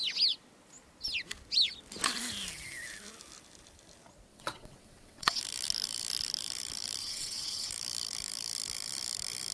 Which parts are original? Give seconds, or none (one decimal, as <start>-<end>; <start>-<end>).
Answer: 0.0-4.3; 5.4-7.0; 7.7-9.5